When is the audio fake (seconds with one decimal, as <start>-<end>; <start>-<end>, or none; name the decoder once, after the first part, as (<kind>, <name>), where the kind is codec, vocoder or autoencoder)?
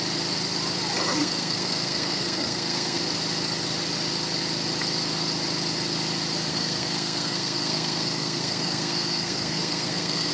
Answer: 1.2-3.0 (codec, SNAC); 6.5-10.3